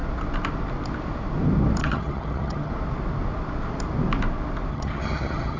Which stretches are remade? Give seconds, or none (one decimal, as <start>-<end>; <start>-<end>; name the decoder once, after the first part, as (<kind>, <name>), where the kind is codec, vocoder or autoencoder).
1.8-2.7 (vocoder, HiFi-GAN); 4.7-5.6